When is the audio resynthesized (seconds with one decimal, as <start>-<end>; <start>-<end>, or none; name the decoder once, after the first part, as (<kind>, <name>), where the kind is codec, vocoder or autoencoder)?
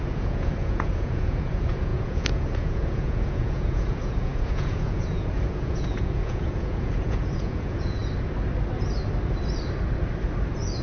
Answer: 0.0-8.0 (vocoder, Vocos)